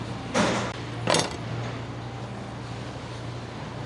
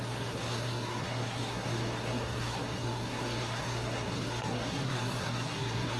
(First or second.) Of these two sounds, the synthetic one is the second